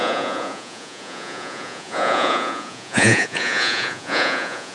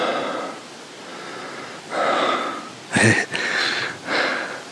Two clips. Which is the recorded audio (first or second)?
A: second